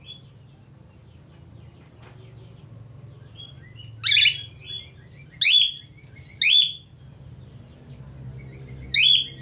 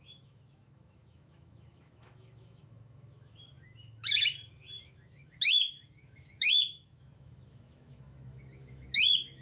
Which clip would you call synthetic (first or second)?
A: second